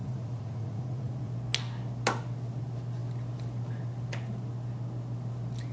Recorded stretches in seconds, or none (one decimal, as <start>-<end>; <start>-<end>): 1.3-5.7